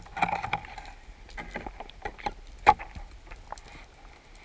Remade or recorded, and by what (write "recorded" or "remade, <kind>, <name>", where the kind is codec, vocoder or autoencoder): recorded